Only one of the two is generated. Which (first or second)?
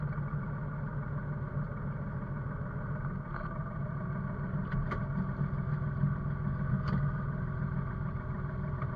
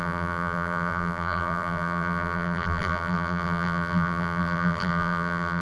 second